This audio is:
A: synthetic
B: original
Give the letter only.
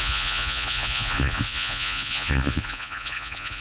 A